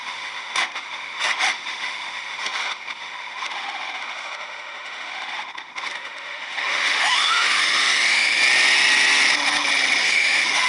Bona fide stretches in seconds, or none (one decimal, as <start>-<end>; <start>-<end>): 8.4-10.0